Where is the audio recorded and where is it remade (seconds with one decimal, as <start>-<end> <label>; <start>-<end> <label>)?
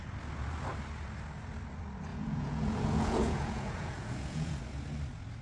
0.0-2.1 recorded; 2.1-4.6 remade; 4.6-5.4 recorded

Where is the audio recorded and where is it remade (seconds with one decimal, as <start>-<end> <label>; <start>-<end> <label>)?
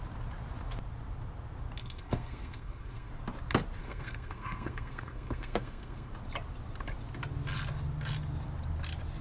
0.0-1.8 recorded; 1.8-3.1 remade; 3.1-3.8 recorded; 3.8-6.1 remade; 6.1-9.2 recorded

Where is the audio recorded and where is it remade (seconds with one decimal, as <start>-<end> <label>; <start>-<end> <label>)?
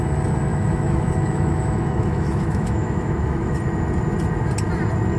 0.0-0.5 recorded; 0.5-3.6 remade; 3.6-5.2 recorded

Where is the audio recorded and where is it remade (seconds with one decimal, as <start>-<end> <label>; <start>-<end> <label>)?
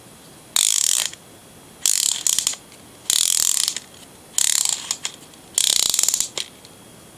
0.0-7.2 recorded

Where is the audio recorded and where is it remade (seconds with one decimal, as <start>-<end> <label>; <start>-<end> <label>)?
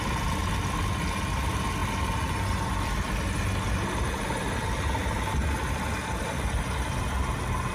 0.0-7.7 recorded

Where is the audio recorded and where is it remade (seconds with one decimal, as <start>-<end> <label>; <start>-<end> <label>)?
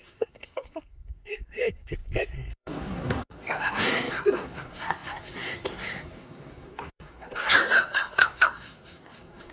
0.0-9.5 remade